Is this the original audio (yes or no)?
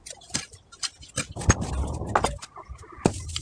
yes